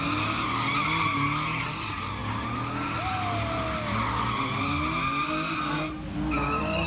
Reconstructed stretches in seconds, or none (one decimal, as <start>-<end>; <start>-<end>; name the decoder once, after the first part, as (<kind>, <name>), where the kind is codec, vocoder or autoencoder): none